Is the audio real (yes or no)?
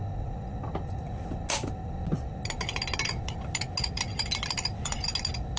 yes